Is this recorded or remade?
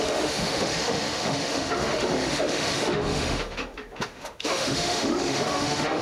remade